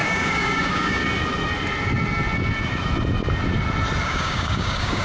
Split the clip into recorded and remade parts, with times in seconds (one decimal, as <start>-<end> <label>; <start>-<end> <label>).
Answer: 0.0-1.0 remade; 1.0-4.0 recorded; 4.0-5.0 remade